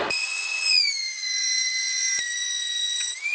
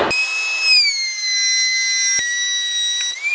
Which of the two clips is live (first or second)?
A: second